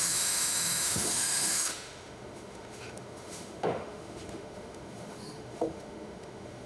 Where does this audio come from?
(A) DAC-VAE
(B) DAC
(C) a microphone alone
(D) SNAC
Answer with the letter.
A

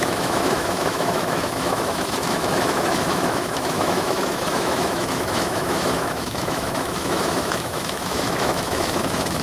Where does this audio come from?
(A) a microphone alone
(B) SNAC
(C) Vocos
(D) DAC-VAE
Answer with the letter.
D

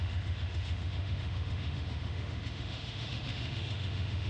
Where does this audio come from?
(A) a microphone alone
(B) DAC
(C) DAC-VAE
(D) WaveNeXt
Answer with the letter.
C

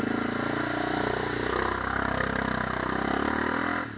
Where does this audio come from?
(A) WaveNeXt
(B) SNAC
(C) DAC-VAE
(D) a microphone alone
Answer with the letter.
D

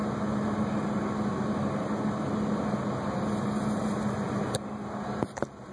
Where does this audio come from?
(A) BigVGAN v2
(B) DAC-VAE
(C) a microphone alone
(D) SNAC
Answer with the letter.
C